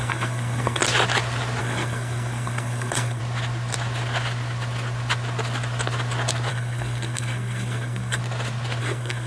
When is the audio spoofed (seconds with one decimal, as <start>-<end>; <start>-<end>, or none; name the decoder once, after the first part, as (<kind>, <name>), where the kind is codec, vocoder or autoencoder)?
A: 0.0-0.8 (codec, SNAC); 1.6-3.2; 6.5-8.2; 8.8-9.3